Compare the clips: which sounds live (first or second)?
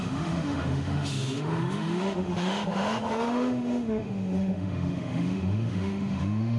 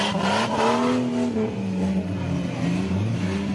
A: second